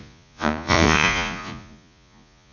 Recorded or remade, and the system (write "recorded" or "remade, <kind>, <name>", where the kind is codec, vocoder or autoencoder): remade, vocoder, Vocos